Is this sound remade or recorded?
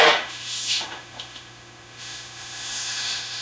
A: remade